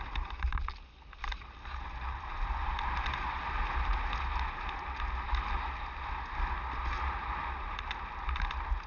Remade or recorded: recorded